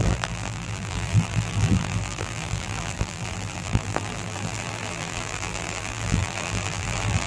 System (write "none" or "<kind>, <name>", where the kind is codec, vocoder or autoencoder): vocoder, BigVGAN v2